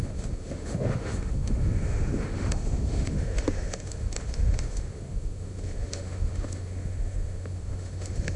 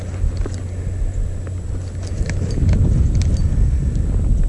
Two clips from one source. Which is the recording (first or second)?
second